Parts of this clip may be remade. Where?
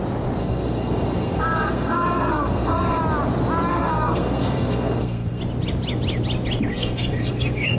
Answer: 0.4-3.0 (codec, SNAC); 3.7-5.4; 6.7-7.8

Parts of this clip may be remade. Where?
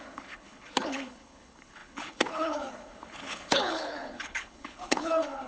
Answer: 0.0-5.5 (codec, HILCodec)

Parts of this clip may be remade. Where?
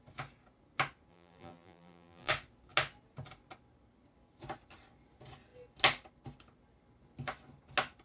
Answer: 1.1-2.3 (vocoder, BigVGAN v2)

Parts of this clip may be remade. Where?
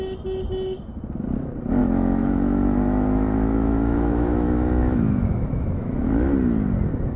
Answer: 1.8-6.1 (autoencoder, DAC-VAE)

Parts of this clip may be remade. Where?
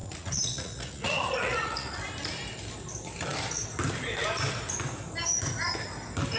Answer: 0.0-2.0 (vocoder, Vocos)